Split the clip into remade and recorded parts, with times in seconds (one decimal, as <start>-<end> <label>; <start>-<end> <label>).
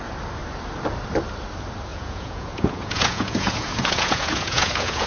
0.0-1.9 recorded; 1.9-5.1 remade